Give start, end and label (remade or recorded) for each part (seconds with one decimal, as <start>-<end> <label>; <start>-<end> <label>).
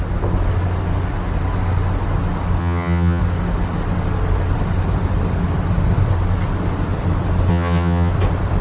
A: 0.0-2.6 recorded; 2.6-3.2 remade; 3.2-7.5 recorded; 7.5-8.1 remade; 8.1-8.6 recorded